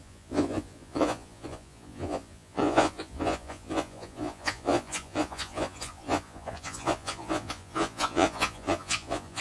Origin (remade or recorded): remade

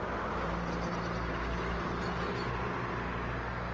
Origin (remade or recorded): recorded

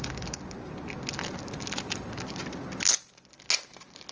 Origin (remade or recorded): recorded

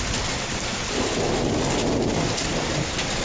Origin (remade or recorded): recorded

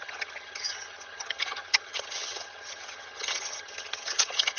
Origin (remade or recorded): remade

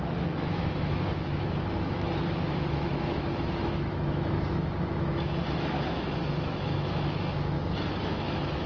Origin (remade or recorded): remade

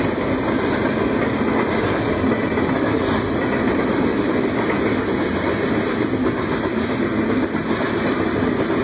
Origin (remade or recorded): recorded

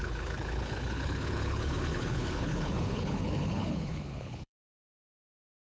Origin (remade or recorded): remade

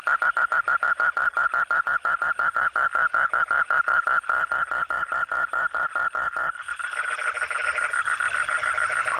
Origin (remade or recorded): recorded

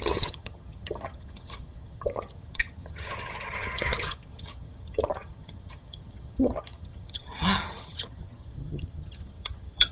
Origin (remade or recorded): remade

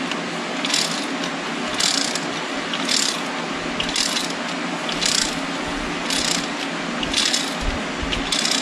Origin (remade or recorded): recorded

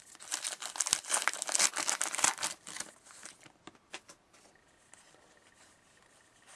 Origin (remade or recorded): recorded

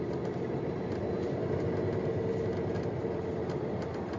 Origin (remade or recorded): recorded